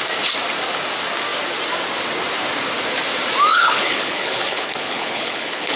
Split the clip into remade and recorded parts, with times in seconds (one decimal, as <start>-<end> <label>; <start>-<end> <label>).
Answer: 0.0-3.5 recorded; 3.5-5.8 remade